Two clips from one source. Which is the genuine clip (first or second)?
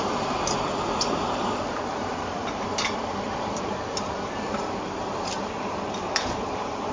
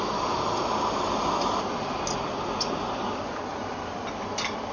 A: second